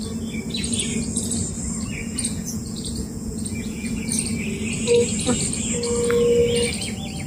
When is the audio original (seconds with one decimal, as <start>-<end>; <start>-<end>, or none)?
0.0-2.0; 4.1-7.3